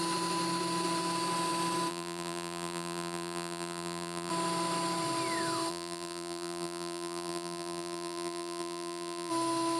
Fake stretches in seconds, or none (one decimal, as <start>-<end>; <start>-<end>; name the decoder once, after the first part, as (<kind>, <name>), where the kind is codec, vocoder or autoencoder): 1.9-4.3 (vocoder, BigVGAN v2); 5.7-9.3